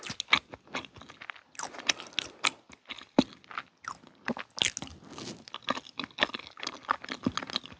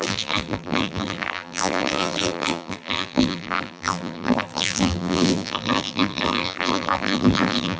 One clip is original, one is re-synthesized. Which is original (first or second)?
first